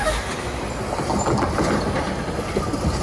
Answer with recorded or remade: recorded